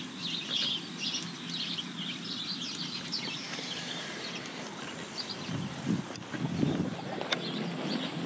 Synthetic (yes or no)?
no